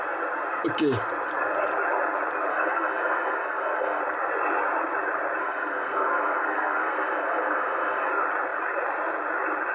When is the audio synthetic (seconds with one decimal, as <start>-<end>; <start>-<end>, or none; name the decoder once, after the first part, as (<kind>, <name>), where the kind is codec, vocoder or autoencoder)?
2.5-4.0 (codec, SNAC); 5.4-8.1